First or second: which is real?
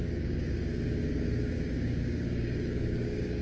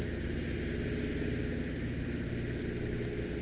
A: second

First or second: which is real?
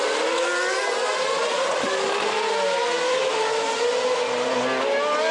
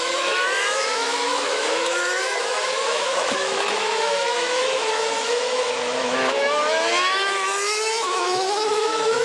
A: first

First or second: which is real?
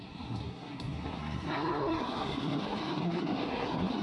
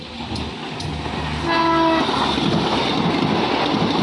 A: second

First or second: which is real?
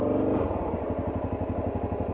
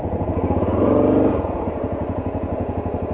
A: first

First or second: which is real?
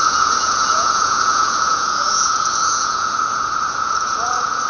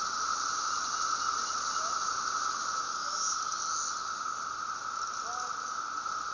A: second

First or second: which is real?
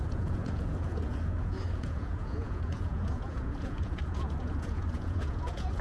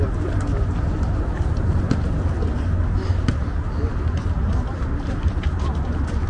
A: second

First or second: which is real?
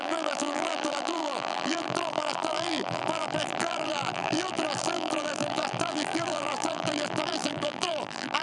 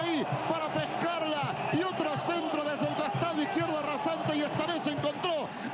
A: second